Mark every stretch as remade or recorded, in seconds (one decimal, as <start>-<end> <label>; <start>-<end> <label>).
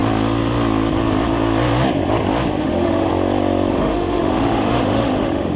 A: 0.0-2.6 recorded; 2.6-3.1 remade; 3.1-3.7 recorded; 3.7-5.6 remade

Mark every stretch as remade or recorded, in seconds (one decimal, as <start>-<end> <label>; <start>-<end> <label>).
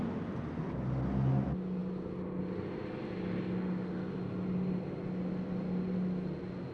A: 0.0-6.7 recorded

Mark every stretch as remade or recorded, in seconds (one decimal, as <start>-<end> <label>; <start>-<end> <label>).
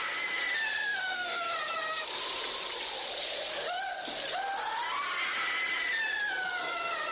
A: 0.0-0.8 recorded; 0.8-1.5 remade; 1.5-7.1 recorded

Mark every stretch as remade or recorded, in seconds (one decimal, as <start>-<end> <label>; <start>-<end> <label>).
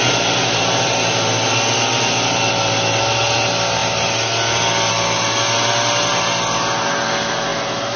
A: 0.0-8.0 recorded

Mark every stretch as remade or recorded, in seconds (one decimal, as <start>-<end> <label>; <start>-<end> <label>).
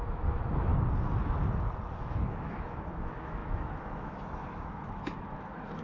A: 0.0-0.7 remade; 0.7-1.9 recorded; 1.9-5.8 remade